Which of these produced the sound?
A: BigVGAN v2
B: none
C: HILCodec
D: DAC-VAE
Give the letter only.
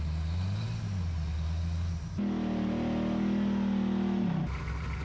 B